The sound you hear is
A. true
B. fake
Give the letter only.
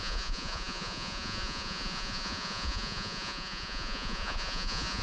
B